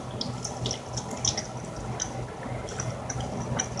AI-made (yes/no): no